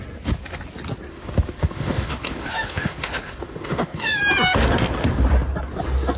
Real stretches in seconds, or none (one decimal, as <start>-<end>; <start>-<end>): 0.0-1.1; 4.2-6.2